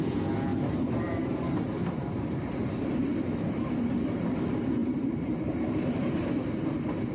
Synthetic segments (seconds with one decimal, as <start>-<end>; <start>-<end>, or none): 0.5-2.3; 4.8-5.5